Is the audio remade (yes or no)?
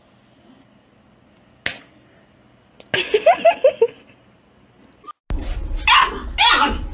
no